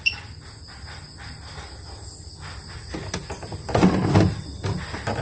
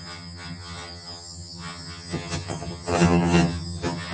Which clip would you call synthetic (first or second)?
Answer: second